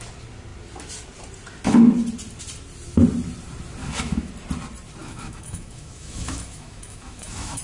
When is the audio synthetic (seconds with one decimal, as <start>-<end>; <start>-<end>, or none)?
3.8-4.3; 5.0-7.6